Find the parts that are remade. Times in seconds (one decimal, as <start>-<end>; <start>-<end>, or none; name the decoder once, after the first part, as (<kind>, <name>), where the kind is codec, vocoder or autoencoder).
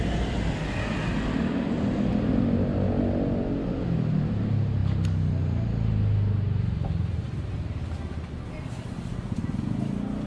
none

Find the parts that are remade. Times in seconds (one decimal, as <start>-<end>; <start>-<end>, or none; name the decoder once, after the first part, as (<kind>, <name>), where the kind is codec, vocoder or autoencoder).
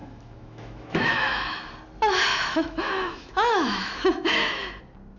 0.0-1.7 (autoencoder, DAC-VAE); 2.3-4.8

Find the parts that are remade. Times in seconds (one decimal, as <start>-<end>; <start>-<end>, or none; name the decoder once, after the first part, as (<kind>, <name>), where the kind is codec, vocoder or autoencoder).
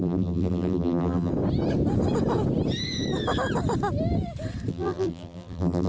0.0-1.3 (vocoder, BigVGAN v2); 4.7-5.9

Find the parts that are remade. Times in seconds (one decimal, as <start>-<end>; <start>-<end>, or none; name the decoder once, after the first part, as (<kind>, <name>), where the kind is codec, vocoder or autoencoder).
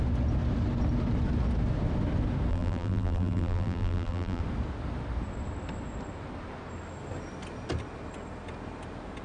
2.5-4.4 (vocoder, BigVGAN v2)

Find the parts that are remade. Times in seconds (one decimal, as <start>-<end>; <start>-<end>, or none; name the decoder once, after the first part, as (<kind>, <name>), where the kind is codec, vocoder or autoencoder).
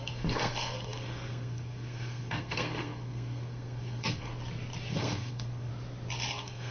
0.0-4.3 (codec, SNAC); 4.9-5.7; 6.3-6.7